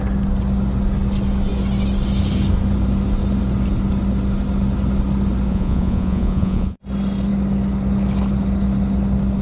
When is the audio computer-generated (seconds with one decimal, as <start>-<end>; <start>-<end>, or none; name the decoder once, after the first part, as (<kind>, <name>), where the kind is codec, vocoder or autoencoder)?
5.5-6.8 (vocoder, Vocos)